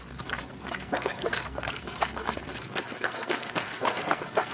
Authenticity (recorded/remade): remade